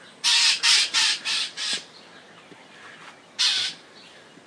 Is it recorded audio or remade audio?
recorded